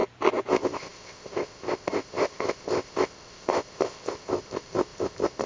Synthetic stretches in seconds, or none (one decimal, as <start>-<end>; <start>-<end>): 0.5-5.5